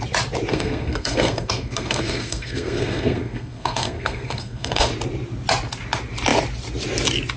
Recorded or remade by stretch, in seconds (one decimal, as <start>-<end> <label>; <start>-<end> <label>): 0.0-0.5 recorded; 0.5-4.9 remade; 4.9-7.4 recorded